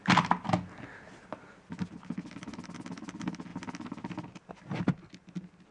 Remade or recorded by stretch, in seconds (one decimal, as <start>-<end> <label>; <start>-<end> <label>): 0.0-5.7 recorded

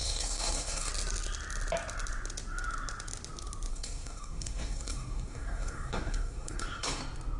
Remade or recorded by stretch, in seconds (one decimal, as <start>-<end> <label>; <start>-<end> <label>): 0.0-0.9 remade; 0.9-3.7 recorded; 3.7-7.0 remade; 7.0-7.4 recorded